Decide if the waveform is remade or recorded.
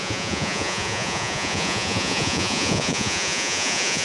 remade